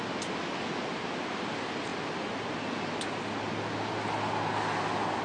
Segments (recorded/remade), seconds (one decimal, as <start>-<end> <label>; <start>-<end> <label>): 0.0-5.2 recorded

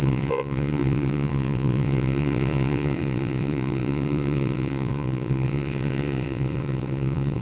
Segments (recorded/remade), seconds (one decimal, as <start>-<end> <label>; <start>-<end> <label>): 0.0-7.4 remade